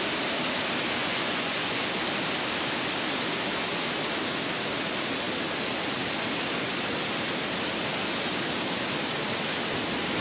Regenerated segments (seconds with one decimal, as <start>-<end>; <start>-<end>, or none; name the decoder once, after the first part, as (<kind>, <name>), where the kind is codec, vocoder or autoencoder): 1.0-1.8 (vocoder, Vocos)